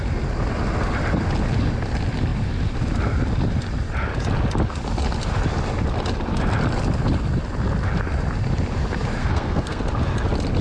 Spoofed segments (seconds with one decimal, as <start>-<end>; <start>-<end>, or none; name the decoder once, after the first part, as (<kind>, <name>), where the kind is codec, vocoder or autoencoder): 9.2-9.8 (codec, SNAC)